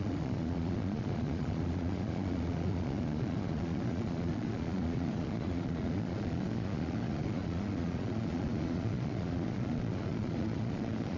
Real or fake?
fake